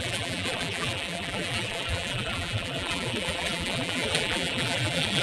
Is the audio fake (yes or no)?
yes